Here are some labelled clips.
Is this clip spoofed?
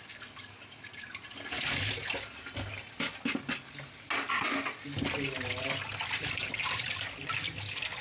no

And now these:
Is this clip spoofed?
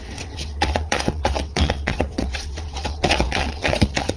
yes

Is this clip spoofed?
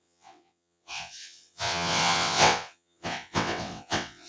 yes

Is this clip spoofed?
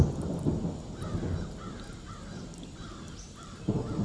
no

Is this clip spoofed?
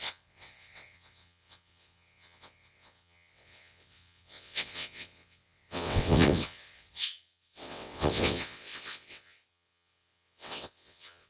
yes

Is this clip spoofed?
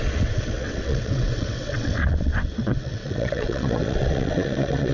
yes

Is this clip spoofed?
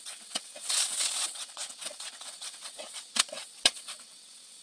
yes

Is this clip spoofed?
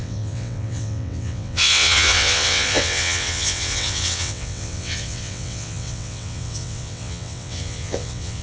yes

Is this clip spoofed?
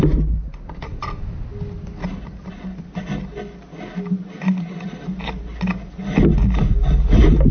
no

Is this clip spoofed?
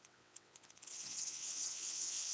yes